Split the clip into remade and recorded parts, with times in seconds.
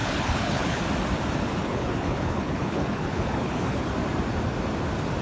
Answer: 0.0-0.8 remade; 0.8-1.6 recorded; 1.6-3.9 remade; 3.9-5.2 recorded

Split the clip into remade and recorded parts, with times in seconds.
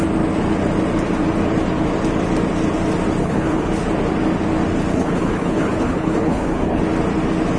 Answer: 0.0-3.2 recorded; 3.2-3.7 remade; 3.7-4.9 recorded; 4.9-6.8 remade; 6.8-7.6 recorded